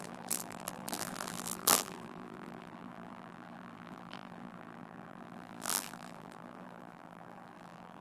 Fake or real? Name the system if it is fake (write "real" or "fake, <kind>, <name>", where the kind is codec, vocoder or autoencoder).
fake, vocoder, BigVGAN v2